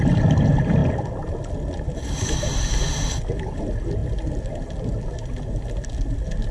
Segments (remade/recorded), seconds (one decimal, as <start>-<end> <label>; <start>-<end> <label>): 0.0-6.5 recorded